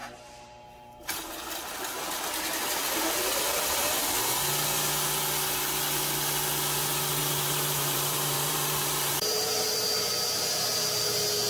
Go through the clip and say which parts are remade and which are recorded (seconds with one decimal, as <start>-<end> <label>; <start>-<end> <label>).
0.0-1.3 remade; 1.3-7.2 recorded; 7.2-10.1 remade; 10.1-11.5 recorded